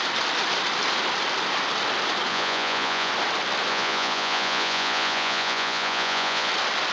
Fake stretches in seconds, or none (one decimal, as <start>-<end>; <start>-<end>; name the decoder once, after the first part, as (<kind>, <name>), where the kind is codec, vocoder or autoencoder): 2.3-3.1 (vocoder, Vocos); 3.7-6.5